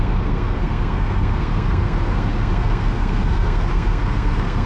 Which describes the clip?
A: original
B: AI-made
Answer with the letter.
B